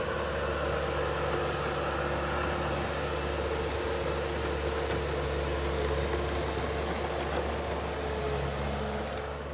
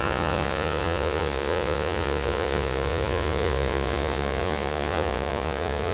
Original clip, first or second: first